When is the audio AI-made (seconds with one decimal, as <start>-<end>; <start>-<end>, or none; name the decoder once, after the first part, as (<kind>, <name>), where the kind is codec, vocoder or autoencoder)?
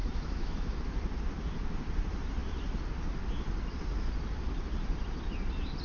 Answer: 0.0-0.8 (autoencoder, DAC-VAE)